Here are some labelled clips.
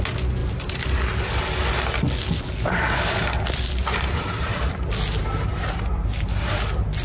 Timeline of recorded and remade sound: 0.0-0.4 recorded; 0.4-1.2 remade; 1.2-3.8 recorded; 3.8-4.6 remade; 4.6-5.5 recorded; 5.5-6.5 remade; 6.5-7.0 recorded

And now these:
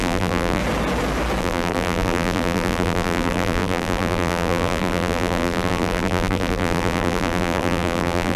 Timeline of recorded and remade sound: 0.0-0.6 remade; 0.6-1.4 recorded; 1.4-8.4 remade

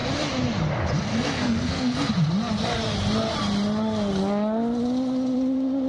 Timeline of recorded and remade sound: 0.0-1.1 recorded; 1.1-2.1 remade; 2.1-5.9 recorded

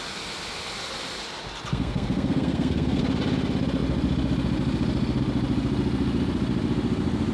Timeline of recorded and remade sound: 0.0-1.7 recorded; 1.7-3.0 remade; 3.0-7.3 recorded